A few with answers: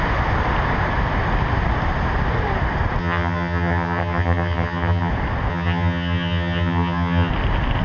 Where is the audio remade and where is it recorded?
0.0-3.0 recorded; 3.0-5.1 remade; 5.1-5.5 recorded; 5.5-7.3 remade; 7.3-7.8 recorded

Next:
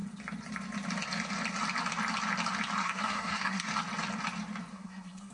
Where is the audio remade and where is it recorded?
0.0-2.8 recorded; 2.8-3.7 remade; 3.7-4.7 recorded; 4.7-5.3 remade

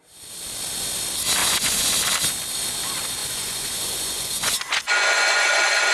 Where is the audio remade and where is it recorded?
0.0-1.4 recorded; 1.4-1.9 remade; 1.9-3.2 recorded; 3.2-5.9 remade

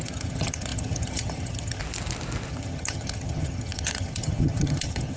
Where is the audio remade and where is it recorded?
0.0-1.8 remade; 1.8-2.5 recorded; 2.5-5.2 remade